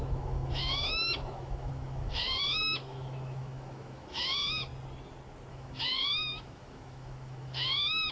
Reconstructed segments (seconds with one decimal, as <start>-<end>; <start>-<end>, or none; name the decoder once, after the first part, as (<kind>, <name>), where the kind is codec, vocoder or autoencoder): 0.0-4.7 (autoencoder, DAC-VAE); 5.5-8.1